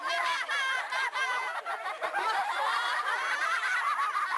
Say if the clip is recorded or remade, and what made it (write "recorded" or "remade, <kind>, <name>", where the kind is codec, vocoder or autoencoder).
remade, vocoder, BigVGAN v2